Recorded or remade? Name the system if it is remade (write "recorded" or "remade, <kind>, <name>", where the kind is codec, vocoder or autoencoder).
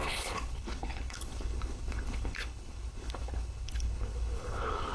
remade, codec, HILCodec